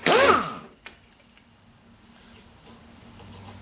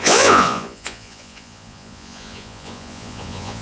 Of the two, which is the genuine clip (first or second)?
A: first